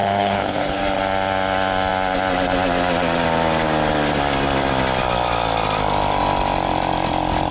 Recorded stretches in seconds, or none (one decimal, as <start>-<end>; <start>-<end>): 0.8-7.5